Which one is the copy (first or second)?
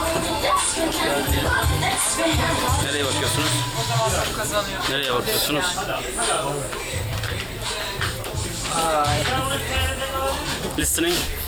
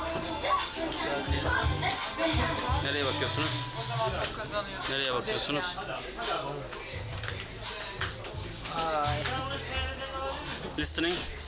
first